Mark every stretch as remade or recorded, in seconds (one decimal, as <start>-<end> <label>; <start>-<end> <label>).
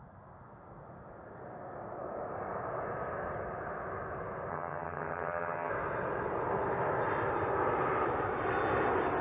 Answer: 0.0-4.5 recorded; 4.5-5.7 remade; 5.7-9.2 recorded